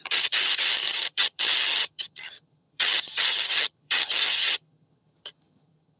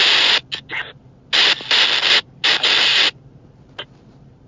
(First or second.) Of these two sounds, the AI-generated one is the first